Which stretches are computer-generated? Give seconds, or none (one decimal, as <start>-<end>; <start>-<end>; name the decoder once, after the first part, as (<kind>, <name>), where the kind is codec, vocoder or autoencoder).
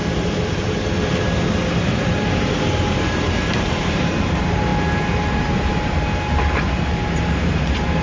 2.3-4.7 (vocoder, BigVGAN v2); 5.2-8.0